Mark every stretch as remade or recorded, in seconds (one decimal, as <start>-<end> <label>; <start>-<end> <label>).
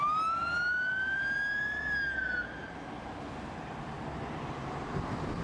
0.0-5.4 recorded